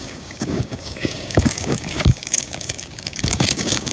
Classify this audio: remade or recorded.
remade